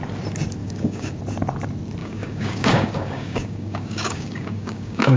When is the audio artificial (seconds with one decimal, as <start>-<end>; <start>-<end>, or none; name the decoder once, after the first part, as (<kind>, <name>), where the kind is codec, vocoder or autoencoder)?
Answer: 0.6-1.2 (codec, DAC); 2.0-5.2